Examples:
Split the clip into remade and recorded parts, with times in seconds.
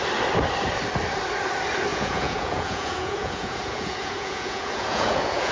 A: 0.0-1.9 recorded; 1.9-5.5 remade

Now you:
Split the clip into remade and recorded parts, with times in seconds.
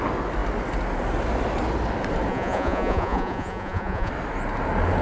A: 0.0-2.3 recorded; 2.3-4.1 remade; 4.1-5.0 recorded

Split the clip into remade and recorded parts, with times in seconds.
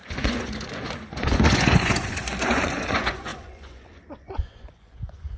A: 0.0-5.4 remade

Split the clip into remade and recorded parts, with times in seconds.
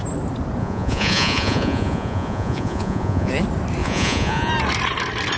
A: 0.0-0.6 recorded; 0.6-3.3 remade; 3.3-3.8 recorded; 3.8-4.5 remade; 4.5-5.4 recorded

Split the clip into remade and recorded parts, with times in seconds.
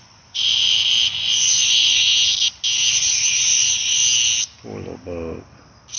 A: 0.0-2.1 remade; 2.1-2.9 recorded; 2.9-4.0 remade; 4.0-6.0 recorded